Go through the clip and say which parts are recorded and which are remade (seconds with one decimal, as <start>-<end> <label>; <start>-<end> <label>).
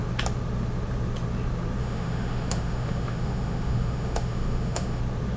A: 0.0-1.8 recorded; 1.8-5.0 remade; 5.0-5.4 recorded